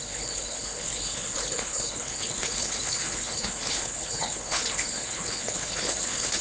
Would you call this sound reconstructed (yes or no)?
yes